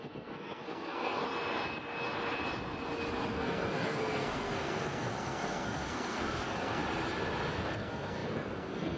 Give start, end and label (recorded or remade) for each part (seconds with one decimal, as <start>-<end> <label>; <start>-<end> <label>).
0.0-1.2 remade; 1.2-3.3 recorded; 3.3-6.8 remade; 6.8-7.5 recorded; 7.5-9.0 remade